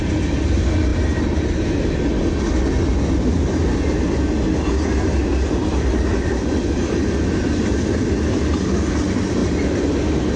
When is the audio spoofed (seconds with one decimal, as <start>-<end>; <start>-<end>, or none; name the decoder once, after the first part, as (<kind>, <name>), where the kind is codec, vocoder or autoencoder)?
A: none